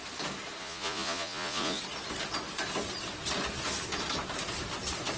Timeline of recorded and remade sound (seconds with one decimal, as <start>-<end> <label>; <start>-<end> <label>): 0.0-0.6 recorded; 0.6-1.8 remade; 1.8-5.2 recorded